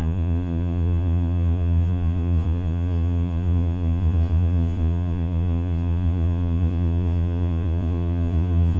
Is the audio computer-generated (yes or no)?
yes